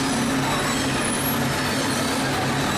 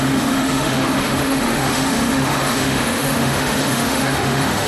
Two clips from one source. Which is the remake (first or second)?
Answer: second